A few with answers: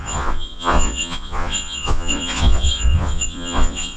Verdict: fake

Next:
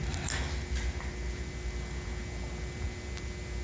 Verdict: real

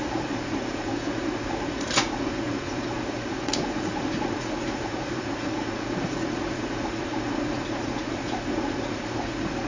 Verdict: fake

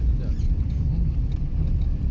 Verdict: real